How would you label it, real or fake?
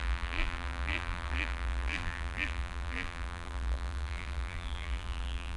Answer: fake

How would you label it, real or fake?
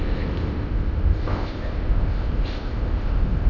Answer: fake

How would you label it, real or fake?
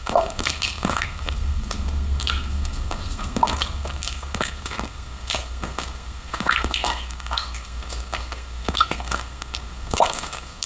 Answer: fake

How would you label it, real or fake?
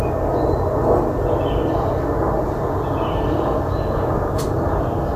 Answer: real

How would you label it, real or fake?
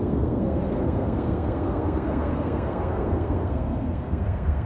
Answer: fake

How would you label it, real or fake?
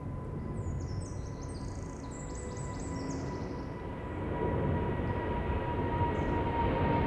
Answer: real